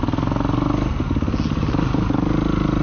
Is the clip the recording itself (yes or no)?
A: yes